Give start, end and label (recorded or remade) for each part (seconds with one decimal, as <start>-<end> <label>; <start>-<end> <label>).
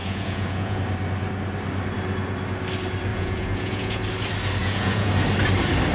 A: 0.0-0.8 remade; 0.8-3.1 recorded; 3.1-4.0 remade; 4.0-4.6 recorded; 4.6-5.1 remade; 5.1-5.9 recorded